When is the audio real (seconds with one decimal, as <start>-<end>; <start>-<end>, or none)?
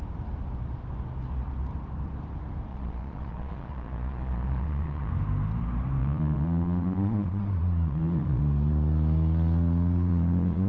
0.0-2.7; 5.1-6.0; 8.4-10.1